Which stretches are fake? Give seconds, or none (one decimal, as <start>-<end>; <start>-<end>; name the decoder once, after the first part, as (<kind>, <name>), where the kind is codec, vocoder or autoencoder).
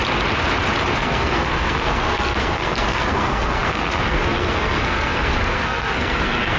0.9-6.6 (codec, SNAC)